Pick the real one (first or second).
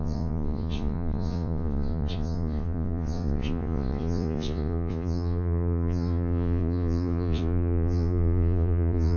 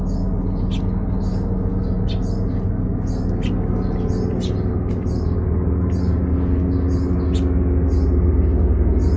second